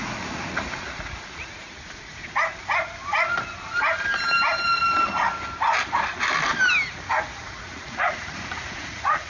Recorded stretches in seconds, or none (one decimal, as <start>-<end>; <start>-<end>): 2.2-7.3